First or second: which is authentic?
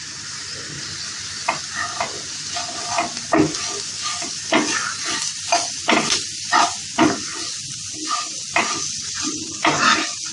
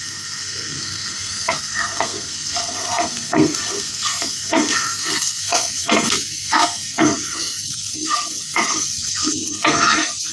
first